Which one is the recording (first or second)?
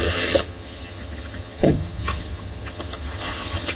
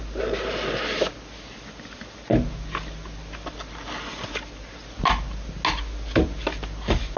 second